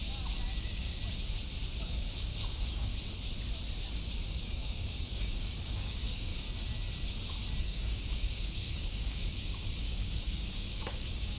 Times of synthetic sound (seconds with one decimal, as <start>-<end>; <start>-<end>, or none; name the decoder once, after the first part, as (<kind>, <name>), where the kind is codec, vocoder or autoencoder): 0.6-1.0 (codec, DAC); 1.8-2.9; 4.4-6.3; 7.6-11.4